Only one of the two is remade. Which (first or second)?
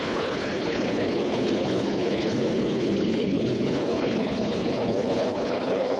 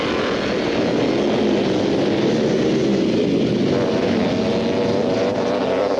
first